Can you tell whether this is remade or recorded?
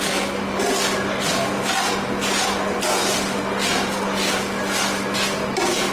recorded